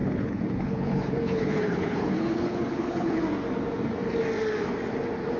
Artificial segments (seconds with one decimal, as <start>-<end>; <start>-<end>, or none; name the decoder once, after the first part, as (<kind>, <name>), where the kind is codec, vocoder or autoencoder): 0.0-3.2 (codec, HILCodec)